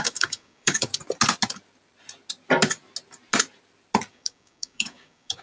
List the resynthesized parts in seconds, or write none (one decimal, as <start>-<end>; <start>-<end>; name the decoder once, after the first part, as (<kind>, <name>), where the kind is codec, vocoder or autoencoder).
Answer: 0.0-0.9 (codec, DAC); 4.1-5.4